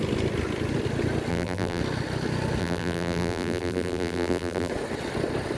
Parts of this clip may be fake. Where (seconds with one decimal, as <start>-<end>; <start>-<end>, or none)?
1.3-1.8; 2.6-4.7